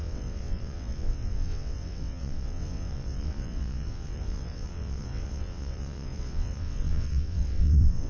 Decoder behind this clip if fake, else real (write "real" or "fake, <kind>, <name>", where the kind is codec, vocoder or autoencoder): fake, vocoder, WaveNeXt